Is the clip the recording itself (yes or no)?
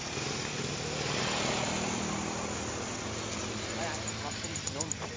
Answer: yes